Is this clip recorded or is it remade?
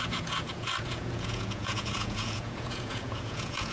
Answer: remade